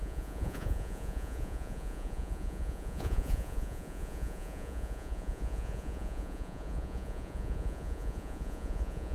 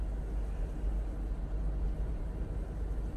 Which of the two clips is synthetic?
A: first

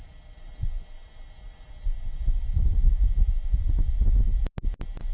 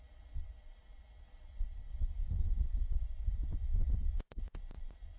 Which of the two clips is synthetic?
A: second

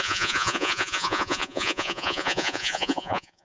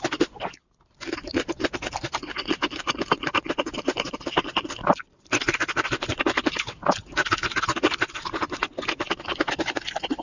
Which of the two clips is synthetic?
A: first